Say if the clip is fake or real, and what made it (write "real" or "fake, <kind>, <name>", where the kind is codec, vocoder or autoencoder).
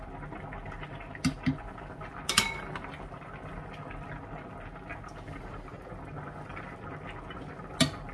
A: real